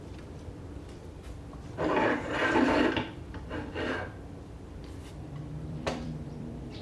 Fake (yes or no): yes